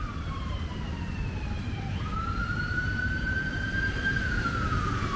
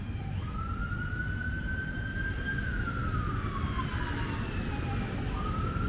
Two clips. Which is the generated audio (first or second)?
first